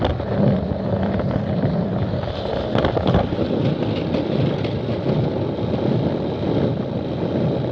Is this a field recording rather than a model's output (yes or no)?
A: yes